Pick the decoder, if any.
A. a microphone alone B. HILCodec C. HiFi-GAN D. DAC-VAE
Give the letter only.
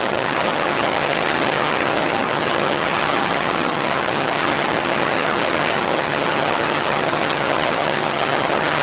C